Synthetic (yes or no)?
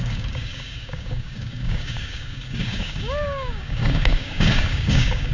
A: yes